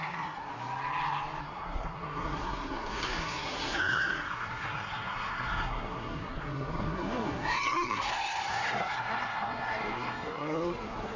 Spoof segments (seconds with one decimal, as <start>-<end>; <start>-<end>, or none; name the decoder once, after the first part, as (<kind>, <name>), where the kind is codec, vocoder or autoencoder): 0.0-0.5 (codec, SNAC); 1.4-11.2